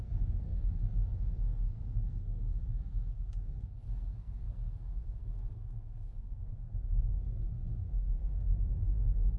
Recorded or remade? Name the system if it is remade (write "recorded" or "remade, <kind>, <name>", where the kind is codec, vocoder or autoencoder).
remade, codec, SNAC